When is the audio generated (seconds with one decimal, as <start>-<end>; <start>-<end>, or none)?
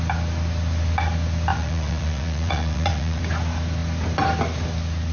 1.5-3.2